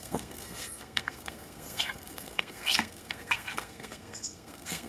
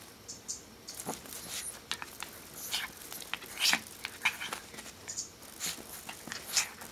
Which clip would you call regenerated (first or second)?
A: first